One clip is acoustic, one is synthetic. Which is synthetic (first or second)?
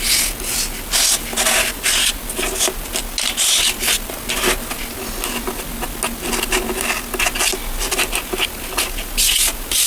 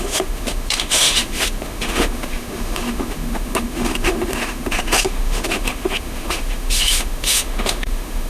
second